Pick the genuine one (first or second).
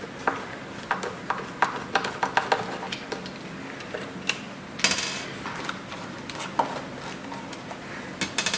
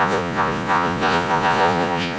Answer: first